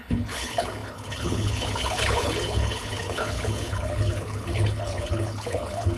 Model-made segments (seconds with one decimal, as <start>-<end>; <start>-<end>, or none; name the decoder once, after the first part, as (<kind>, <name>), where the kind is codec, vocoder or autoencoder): 0.0-6.0 (codec, HILCodec)